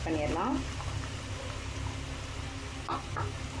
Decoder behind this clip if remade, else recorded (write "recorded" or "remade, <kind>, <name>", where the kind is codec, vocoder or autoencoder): recorded